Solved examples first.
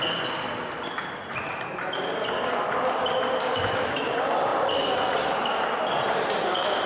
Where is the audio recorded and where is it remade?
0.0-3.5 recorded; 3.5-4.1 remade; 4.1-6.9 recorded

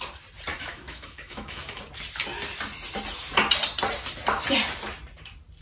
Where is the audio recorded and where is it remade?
0.0-0.5 recorded; 0.5-1.8 remade; 1.8-5.6 recorded

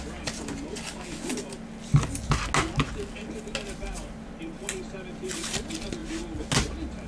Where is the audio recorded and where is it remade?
0.0-7.1 recorded

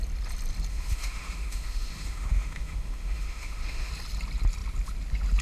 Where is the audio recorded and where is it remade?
0.0-0.7 recorded; 0.7-3.9 remade; 3.9-5.4 recorded

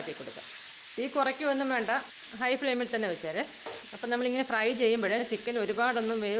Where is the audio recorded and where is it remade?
0.0-0.9 remade; 0.9-2.1 recorded; 2.1-6.4 remade

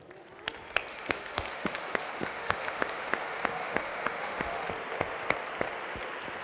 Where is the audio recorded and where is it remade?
0.0-0.9 recorded; 0.9-4.7 remade; 4.7-6.4 recorded

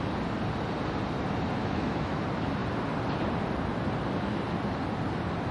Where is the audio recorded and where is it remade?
0.0-1.6 recorded; 1.6-2.2 remade; 2.2-5.5 recorded

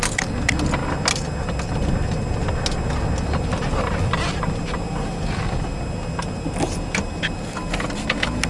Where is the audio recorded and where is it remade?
0.0-8.5 recorded